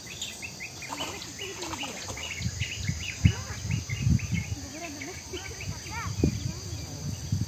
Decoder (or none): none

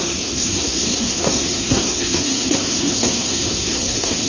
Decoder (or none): codec, SNAC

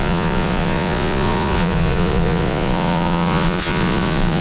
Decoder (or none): vocoder, Vocos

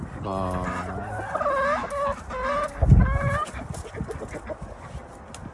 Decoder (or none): none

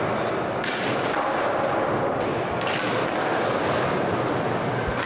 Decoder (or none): none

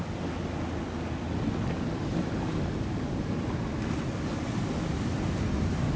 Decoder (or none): none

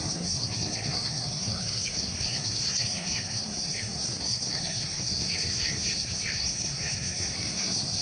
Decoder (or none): codec, SNAC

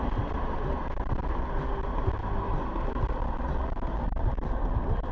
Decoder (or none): none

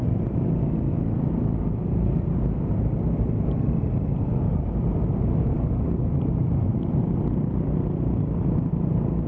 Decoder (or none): none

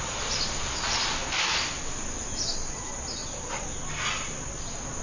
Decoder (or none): none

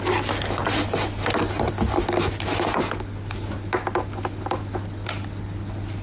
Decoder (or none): none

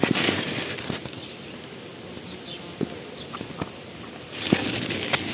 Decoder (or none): none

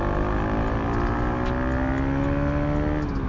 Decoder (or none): none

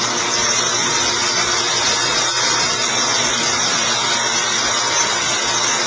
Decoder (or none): none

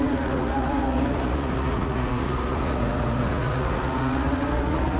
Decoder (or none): vocoder, Vocos